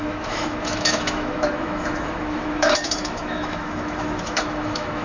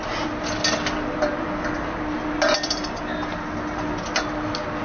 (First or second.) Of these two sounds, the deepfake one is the first